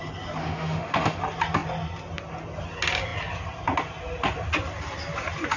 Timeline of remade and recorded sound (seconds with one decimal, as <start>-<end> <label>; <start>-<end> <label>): 0.0-0.4 recorded; 0.4-1.2 remade; 1.2-5.6 recorded